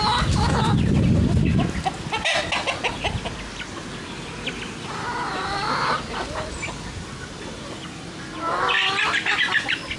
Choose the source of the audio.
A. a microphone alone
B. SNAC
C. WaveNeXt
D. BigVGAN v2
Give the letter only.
A